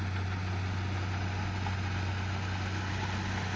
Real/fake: real